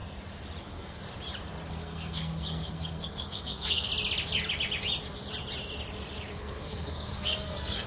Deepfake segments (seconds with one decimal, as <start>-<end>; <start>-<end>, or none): 0.6-1.0; 1.7-3.9; 6.3-7.9